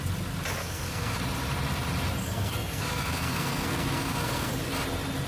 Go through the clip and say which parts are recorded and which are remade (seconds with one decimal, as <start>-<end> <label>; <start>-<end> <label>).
0.0-0.6 recorded; 0.6-1.2 remade; 1.2-2.2 recorded; 2.2-4.5 remade; 4.5-5.3 recorded